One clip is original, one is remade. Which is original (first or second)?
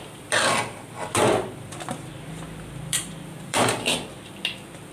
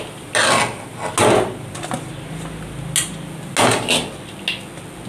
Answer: second